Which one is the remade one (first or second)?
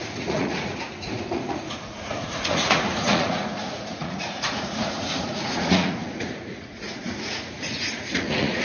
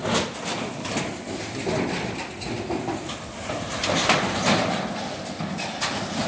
first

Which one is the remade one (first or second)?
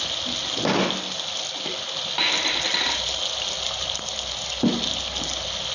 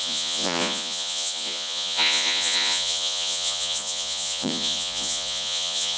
second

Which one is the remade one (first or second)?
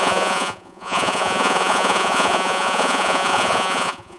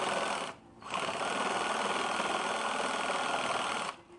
first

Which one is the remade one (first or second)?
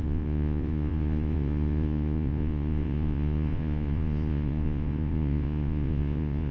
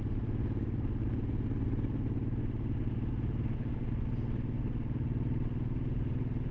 first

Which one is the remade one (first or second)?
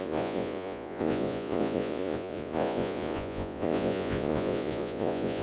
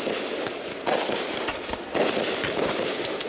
first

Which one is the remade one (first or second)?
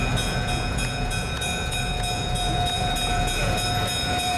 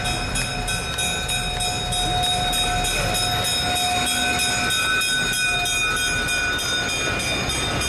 first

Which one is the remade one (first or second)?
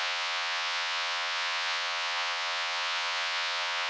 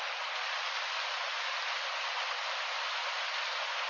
first